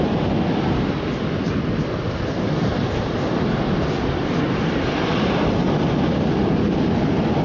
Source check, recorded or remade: recorded